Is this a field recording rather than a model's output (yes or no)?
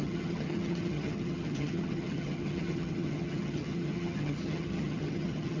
no